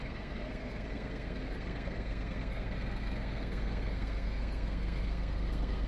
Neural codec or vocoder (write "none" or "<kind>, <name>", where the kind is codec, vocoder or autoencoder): codec, SNAC